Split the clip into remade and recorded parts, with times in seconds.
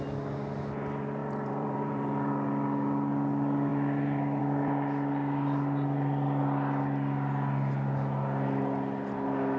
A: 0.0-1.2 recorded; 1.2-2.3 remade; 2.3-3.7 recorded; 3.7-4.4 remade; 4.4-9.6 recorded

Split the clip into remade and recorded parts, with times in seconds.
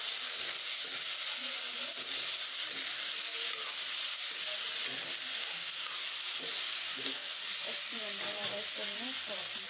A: 0.0-6.8 recorded; 6.8-7.4 remade; 7.4-9.7 recorded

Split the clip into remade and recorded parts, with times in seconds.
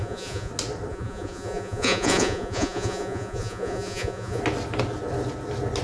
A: 0.0-0.5 remade; 0.5-0.9 recorded; 0.9-4.4 remade; 4.4-5.8 recorded